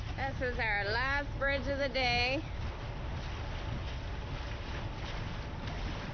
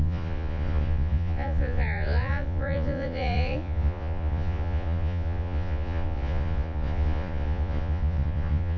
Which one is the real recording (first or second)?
first